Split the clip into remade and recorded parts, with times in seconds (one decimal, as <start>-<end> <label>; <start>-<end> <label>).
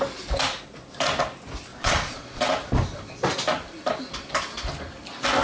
0.0-1.7 recorded; 1.7-2.4 remade; 2.4-5.4 recorded